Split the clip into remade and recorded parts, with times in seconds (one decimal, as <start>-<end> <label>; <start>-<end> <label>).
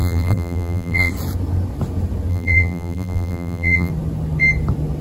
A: 0.0-1.1 remade; 1.1-2.3 recorded; 2.3-3.9 remade; 3.9-5.0 recorded